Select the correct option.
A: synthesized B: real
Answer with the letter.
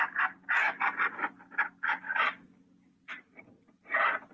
B